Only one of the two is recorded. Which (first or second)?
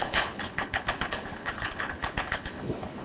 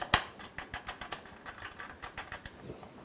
second